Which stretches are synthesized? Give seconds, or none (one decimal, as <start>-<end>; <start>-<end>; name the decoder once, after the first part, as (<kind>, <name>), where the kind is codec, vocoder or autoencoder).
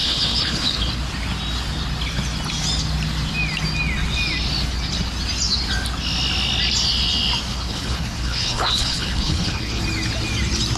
0.0-0.9 (codec, HILCodec); 7.5-9.8